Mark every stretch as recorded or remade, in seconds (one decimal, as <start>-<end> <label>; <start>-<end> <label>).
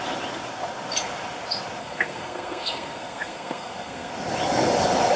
0.0-1.8 recorded; 1.8-4.1 remade; 4.1-5.2 recorded